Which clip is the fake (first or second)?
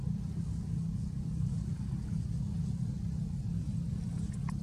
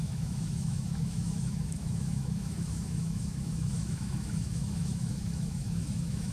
second